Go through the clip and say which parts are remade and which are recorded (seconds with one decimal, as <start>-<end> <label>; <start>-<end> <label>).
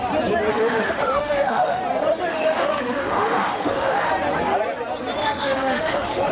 0.0-0.5 recorded; 0.5-1.8 remade; 1.8-2.3 recorded; 2.3-4.1 remade; 4.1-5.2 recorded; 5.2-6.3 remade